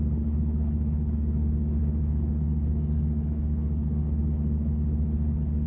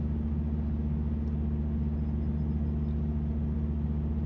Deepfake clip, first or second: first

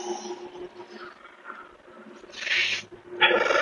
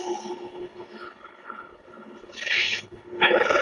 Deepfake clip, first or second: second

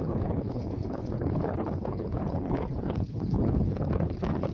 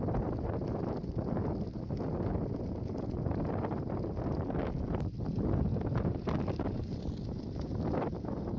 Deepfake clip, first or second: first